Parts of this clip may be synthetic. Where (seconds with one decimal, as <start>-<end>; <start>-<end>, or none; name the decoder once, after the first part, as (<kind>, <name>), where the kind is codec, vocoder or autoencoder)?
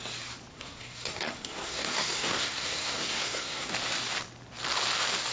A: 0.5-3.7 (codec, SNAC)